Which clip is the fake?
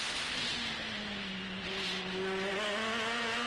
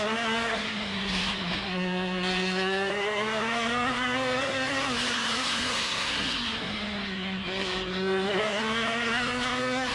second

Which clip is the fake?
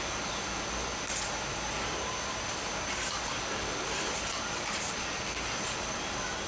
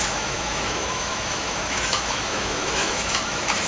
second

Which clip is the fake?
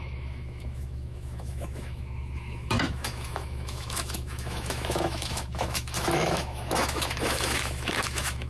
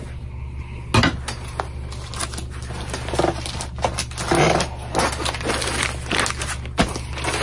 first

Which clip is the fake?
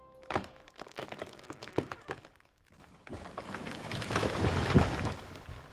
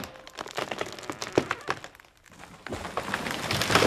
first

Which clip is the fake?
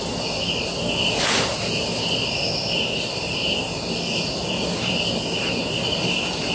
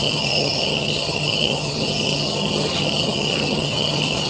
second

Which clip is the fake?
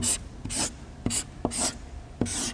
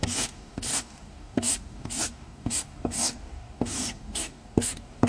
second